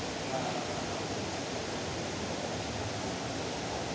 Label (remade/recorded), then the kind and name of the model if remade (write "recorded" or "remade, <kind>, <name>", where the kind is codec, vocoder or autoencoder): recorded